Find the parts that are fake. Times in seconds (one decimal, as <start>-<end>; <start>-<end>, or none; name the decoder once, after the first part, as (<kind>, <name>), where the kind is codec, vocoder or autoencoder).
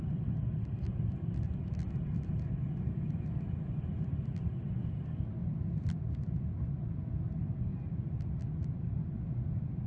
none